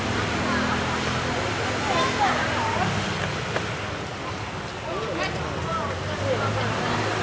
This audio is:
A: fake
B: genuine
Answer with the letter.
B